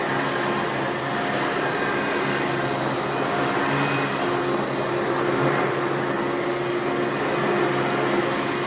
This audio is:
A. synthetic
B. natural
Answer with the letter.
B